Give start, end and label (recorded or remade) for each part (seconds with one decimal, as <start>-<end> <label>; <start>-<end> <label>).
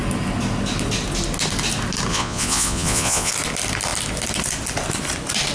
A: 0.0-2.1 recorded; 2.1-3.3 remade; 3.3-5.5 recorded